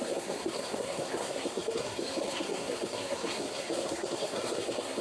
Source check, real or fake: fake